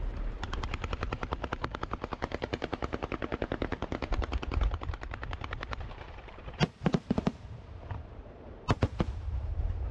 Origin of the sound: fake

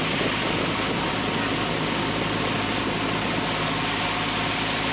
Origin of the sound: real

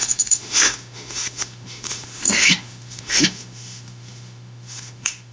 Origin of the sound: fake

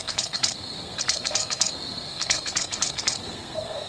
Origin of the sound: fake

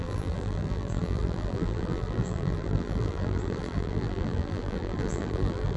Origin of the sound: fake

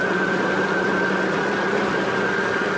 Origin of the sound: real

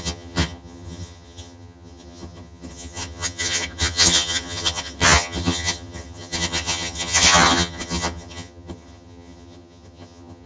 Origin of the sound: fake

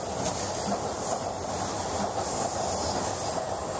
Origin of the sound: real